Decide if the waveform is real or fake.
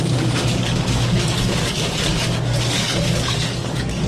fake